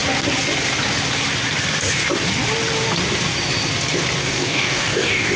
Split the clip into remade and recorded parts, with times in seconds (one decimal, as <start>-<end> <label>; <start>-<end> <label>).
0.0-4.2 recorded; 4.2-5.4 remade